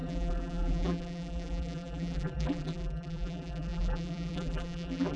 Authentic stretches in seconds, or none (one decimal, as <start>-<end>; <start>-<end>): none